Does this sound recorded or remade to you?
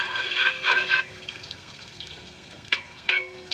remade